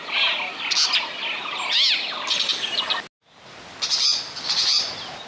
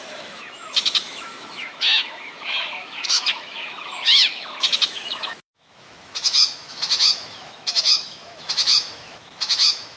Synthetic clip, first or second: second